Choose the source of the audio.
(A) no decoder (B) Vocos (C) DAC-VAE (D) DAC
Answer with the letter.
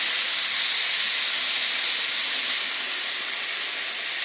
A